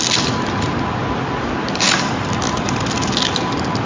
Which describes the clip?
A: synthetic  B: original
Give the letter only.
B